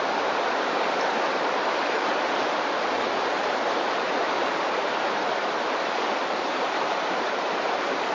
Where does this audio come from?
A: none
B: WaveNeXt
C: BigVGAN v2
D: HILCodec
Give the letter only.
C